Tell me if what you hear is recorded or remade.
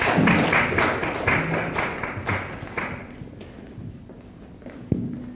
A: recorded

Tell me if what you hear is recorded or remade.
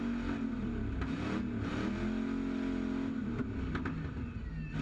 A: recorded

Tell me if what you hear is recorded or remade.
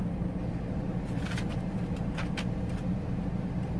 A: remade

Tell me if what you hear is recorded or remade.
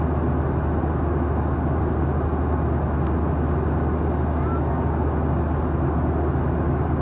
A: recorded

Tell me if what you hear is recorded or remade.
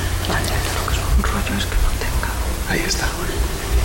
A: recorded